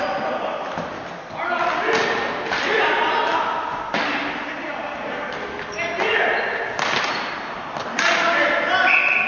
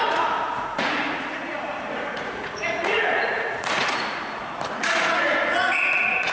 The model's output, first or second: second